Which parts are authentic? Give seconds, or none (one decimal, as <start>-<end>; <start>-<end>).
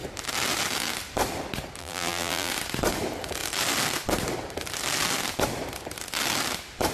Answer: 0.0-1.8; 2.5-6.9